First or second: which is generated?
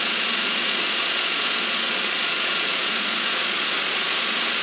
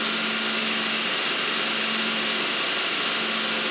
first